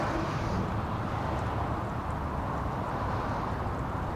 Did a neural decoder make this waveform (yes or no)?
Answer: no